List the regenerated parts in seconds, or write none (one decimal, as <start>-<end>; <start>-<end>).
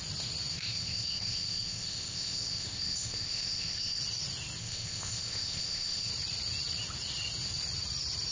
0.5-4.0; 4.6-6.1